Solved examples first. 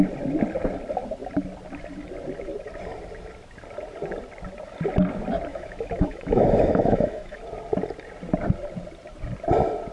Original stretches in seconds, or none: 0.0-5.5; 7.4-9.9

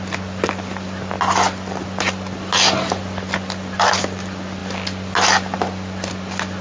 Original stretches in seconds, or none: 0.0-6.6